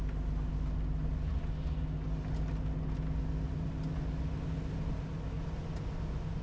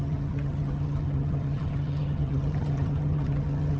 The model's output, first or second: second